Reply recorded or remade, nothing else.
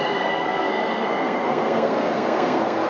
remade